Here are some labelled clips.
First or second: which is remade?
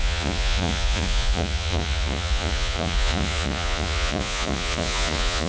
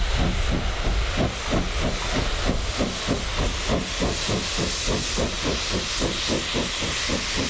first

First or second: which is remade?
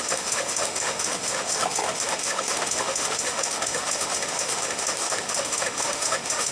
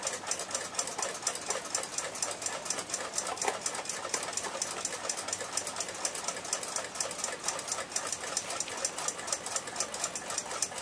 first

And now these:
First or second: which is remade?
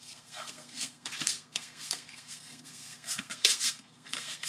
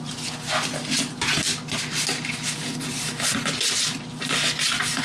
first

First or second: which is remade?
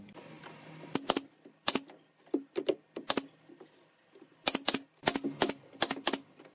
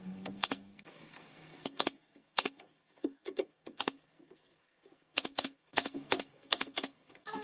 second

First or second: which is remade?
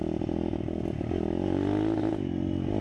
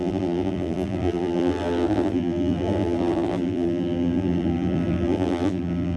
second